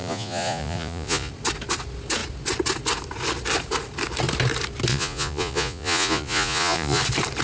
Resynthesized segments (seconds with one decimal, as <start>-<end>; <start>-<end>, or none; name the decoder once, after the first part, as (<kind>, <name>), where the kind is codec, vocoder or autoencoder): 0.0-1.3 (vocoder, Vocos); 4.9-7.0